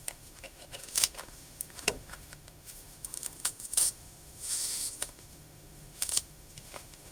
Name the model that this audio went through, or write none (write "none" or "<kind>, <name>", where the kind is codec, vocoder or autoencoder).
autoencoder, DAC-VAE